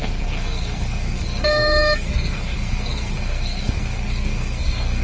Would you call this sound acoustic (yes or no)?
no